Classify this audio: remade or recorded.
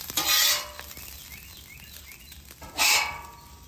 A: recorded